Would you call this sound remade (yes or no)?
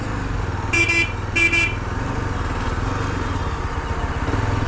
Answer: no